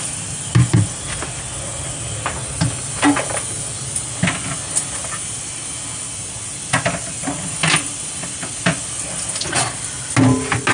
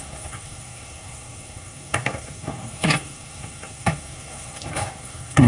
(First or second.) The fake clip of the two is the second